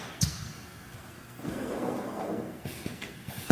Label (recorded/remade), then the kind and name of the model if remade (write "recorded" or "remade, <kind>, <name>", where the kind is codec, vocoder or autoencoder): remade, codec, SNAC